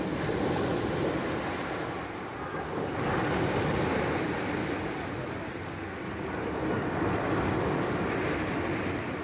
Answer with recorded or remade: recorded